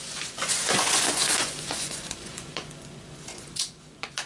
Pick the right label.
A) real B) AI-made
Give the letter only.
B